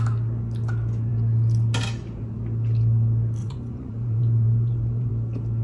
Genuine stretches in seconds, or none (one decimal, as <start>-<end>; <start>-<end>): 0.0-3.4; 5.1-5.6